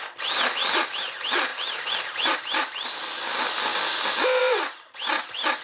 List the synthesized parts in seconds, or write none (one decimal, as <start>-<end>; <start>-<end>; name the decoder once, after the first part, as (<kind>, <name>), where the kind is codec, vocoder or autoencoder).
none